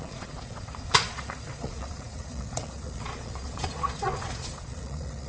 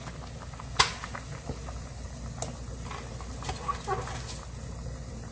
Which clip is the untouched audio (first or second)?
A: second